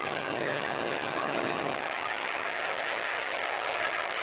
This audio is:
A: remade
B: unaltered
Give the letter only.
A